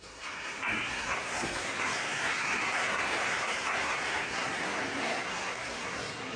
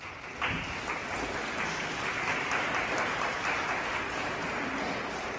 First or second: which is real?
second